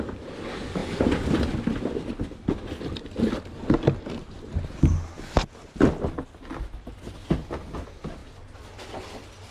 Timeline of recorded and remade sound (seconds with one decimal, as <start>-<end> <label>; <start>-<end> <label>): 0.0-9.5 recorded